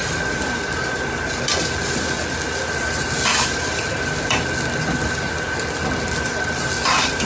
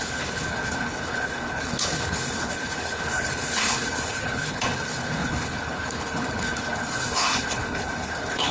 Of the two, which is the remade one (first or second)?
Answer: second